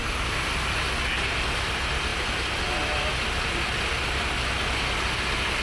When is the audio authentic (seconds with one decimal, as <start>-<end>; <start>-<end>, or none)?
0.0-5.6